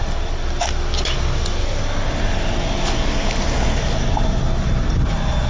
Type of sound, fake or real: real